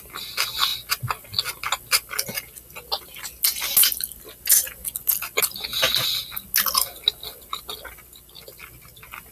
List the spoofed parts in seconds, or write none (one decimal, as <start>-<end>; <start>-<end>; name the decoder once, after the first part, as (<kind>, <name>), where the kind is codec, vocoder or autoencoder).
none